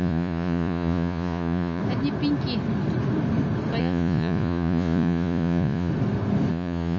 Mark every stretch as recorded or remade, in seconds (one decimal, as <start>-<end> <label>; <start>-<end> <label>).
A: 0.0-1.8 remade; 1.8-3.8 recorded; 3.8-5.9 remade; 5.9-6.5 recorded; 6.5-7.0 remade